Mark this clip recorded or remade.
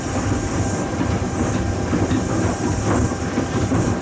recorded